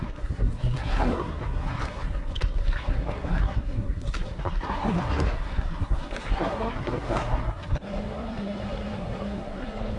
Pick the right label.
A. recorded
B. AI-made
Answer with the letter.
B